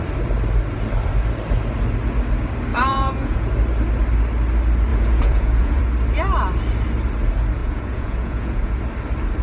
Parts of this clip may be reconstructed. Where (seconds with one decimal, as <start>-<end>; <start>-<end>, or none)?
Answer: 2.7-3.5; 4.9-5.8; 7.6-8.8

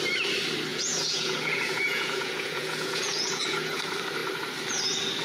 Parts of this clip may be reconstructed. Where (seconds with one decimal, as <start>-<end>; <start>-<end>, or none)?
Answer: 0.7-3.8

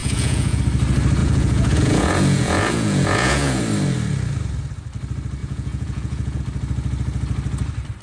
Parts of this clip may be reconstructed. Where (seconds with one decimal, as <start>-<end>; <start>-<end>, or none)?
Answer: 0.0-0.6; 1.2-3.6; 5.4-6.4

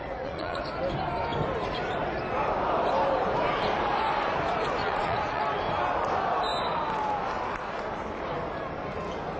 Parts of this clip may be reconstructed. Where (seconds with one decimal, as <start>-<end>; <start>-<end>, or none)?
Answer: 0.0-0.6; 4.8-5.4

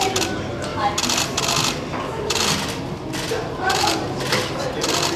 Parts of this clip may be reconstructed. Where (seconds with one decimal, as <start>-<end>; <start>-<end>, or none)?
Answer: none

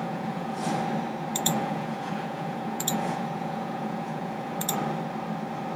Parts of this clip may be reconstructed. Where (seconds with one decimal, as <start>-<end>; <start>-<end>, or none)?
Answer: 0.0-0.7; 1.3-4.7

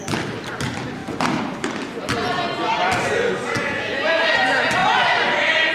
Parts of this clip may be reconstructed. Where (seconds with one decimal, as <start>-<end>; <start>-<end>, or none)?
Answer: 3.6-4.2